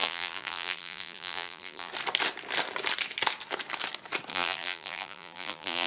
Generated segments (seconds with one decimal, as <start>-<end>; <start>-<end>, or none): 0.0-1.9; 4.3-5.9